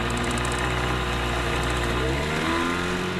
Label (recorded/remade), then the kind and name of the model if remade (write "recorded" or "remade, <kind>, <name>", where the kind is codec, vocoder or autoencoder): recorded